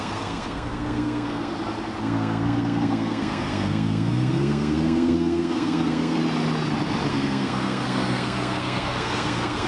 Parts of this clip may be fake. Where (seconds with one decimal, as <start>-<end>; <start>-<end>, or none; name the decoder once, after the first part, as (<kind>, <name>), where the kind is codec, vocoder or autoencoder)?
0.0-1.5 (codec, SNAC); 2.0-6.2; 7.1-9.7